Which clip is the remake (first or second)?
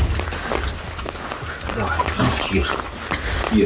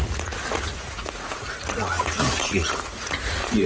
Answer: second